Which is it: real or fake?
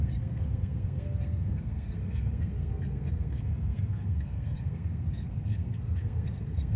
fake